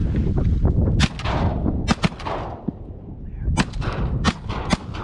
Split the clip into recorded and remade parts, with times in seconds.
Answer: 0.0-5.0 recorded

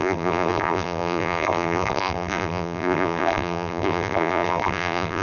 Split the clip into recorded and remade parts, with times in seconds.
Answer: 0.0-5.2 remade

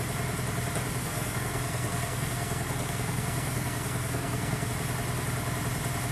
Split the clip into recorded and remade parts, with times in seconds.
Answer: 0.0-1.0 recorded; 1.0-4.7 remade; 4.7-6.1 recorded